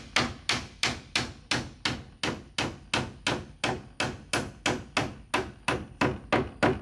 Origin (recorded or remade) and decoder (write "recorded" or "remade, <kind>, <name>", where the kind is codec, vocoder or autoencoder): recorded